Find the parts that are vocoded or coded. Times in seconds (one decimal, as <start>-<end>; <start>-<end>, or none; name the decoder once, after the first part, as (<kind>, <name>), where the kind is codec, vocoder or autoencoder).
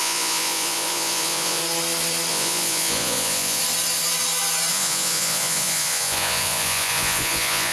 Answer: 0.0-1.6 (vocoder, Vocos); 2.3-3.6; 4.7-7.7